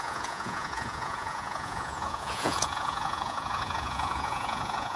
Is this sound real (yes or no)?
no